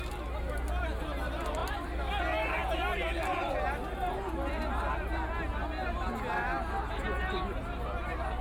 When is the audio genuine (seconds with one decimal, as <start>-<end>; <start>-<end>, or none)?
0.0-8.4